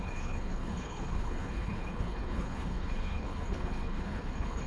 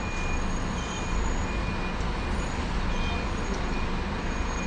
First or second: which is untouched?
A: second